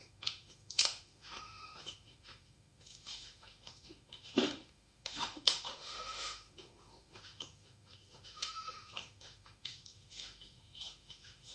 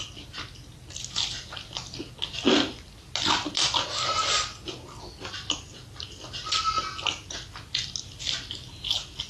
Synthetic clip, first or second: first